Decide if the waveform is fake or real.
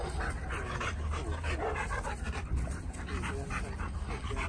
real